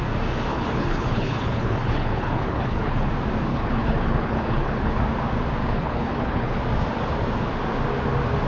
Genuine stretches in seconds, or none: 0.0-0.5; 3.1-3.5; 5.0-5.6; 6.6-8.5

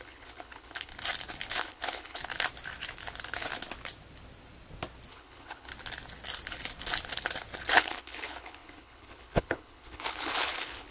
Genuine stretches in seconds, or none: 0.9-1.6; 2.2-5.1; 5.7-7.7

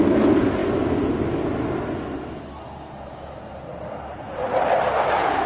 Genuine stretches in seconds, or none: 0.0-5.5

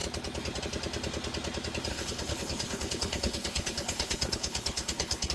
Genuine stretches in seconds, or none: 0.0-1.9

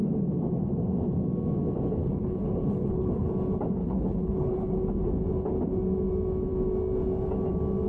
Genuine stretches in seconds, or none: 0.0-2.0; 3.3-3.8; 4.8-7.9

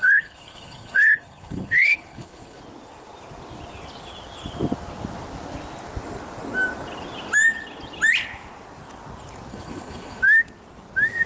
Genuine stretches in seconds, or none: 2.6-9.5; 10.2-11.3

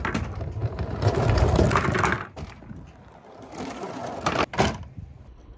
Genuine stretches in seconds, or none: 0.0-5.6